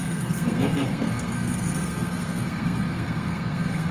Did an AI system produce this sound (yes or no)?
yes